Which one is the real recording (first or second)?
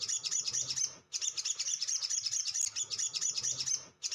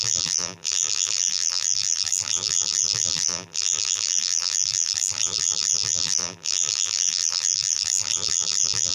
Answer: first